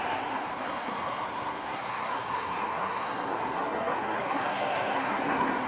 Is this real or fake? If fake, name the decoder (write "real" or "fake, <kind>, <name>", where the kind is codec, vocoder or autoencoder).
fake, codec, SNAC